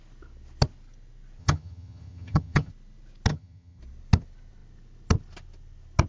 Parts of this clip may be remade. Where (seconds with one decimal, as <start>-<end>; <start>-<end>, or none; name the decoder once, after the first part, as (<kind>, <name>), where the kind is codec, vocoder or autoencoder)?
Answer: 1.4-2.7 (vocoder, HiFi-GAN); 3.3-3.8